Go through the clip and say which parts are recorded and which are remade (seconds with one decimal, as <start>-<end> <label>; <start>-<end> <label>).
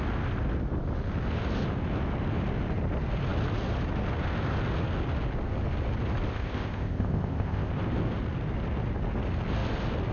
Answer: 0.0-6.3 recorded; 6.3-7.7 remade; 7.7-10.1 recorded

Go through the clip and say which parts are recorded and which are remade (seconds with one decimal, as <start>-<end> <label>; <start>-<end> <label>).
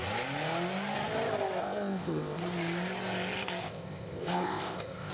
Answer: 0.0-1.6 recorded; 1.6-2.4 remade; 2.4-3.6 recorded; 3.6-5.1 remade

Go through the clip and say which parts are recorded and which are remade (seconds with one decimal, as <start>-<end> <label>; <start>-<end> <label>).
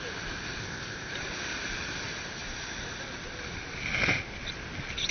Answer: 0.0-0.6 recorded; 0.6-1.1 remade; 1.1-5.1 recorded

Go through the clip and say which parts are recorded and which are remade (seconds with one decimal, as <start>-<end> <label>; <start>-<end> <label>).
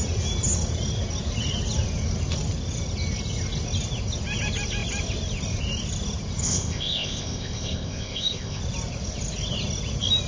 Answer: 0.0-6.4 recorded; 6.4-8.6 remade; 8.6-10.3 recorded